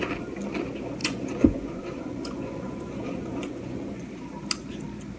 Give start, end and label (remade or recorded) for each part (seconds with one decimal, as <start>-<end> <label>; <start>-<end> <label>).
0.0-1.0 recorded; 1.0-4.1 remade; 4.1-5.2 recorded